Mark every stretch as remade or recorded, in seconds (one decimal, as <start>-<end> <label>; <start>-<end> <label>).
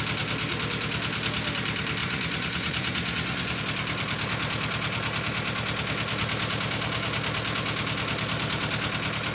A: 0.0-2.0 recorded; 2.0-3.6 remade; 3.6-9.3 recorded